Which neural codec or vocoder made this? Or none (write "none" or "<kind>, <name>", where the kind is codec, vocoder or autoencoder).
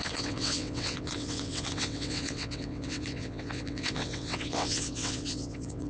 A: vocoder, WaveNeXt